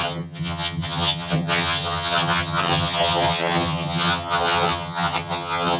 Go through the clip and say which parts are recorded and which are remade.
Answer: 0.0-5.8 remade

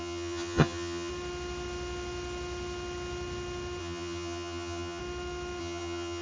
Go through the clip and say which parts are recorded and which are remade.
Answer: 0.0-1.1 remade; 1.1-3.8 recorded; 3.8-5.0 remade; 5.0-5.6 recorded; 5.6-6.2 remade